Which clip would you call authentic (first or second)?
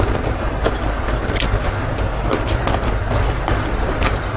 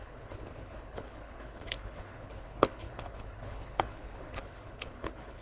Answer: first